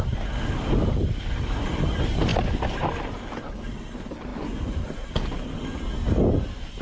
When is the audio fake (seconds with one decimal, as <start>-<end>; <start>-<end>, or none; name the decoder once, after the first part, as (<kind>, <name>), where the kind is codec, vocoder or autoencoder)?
none